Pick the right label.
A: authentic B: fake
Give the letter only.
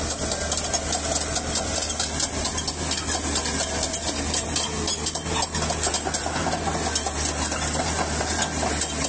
A